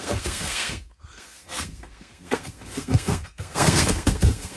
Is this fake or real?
fake